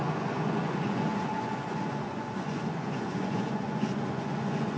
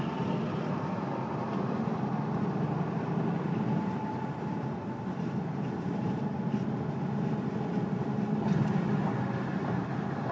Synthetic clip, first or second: first